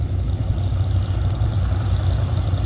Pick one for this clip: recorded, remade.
recorded